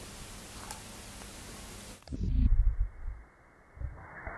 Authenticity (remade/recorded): recorded